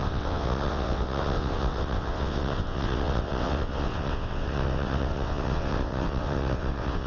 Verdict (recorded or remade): remade